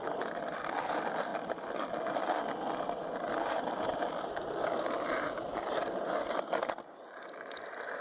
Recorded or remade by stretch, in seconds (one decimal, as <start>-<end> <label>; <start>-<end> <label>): 0.0-1.3 remade; 1.3-3.6 recorded; 3.6-5.5 remade; 5.5-8.0 recorded